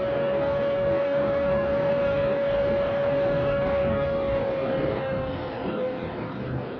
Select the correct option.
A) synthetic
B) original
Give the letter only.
A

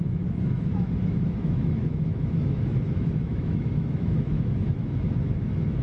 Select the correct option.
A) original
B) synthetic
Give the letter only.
B